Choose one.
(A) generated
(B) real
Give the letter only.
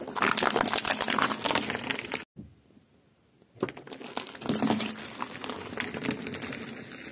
B